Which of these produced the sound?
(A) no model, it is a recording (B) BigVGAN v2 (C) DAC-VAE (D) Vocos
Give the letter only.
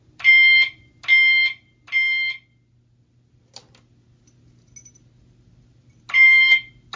A